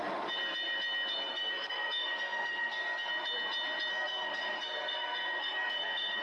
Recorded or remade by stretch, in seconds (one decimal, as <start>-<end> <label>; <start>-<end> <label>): 0.0-1.3 recorded; 1.3-3.1 remade; 3.1-3.9 recorded; 3.9-6.2 remade